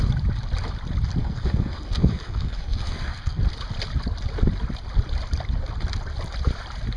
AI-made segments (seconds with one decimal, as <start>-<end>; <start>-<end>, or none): 1.2-3.4